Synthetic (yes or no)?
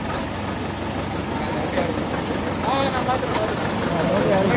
no